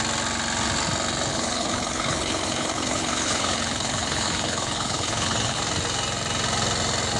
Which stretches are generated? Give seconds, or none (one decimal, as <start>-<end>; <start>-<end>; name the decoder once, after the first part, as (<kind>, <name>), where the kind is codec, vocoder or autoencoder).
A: 1.3-5.6 (codec, HILCodec)